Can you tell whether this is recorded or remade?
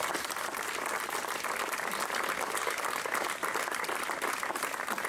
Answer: recorded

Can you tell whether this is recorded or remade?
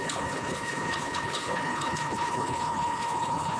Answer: remade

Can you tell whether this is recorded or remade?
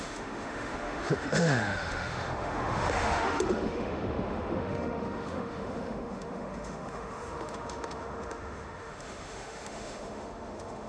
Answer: remade